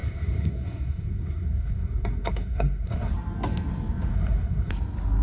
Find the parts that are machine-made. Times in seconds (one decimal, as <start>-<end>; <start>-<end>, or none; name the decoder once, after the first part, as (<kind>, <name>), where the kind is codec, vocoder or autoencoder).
0.0-3.1 (codec, SNAC); 4.1-4.7